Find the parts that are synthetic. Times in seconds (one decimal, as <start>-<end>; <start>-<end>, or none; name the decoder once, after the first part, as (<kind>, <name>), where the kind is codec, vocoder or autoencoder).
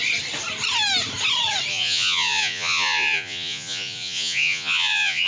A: 1.7-5.3 (vocoder, Vocos)